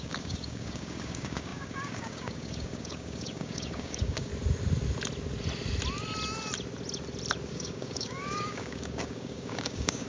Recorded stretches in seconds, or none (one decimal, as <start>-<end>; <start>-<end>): 4.3-7.5